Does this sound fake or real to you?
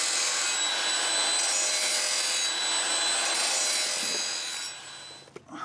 real